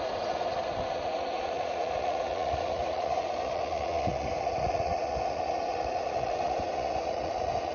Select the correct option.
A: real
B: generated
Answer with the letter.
B